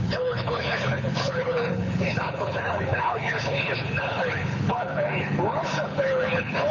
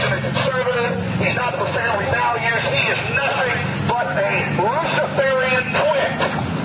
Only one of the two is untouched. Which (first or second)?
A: second